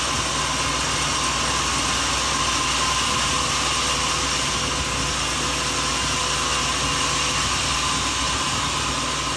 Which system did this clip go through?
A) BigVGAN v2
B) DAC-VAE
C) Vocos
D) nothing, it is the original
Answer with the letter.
D